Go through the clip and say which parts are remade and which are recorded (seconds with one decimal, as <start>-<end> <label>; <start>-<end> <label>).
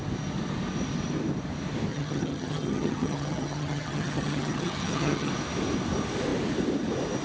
0.0-1.9 recorded; 1.9-5.3 remade; 5.3-7.2 recorded